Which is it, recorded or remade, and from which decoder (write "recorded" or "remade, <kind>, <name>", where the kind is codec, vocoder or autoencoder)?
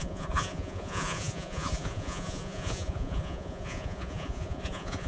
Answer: remade, vocoder, Vocos